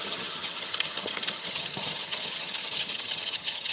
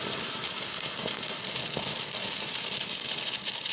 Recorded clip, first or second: second